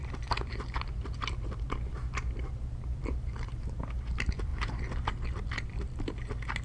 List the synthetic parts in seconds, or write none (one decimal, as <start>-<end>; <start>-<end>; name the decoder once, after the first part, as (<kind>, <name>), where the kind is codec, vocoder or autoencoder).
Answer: 0.0-6.6 (vocoder, BigVGAN v2)